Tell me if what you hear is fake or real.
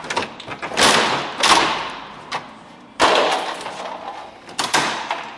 real